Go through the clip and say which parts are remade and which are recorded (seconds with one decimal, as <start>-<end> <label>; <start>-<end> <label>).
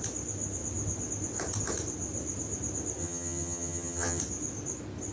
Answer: 0.0-3.0 recorded; 3.0-4.2 remade; 4.2-5.1 recorded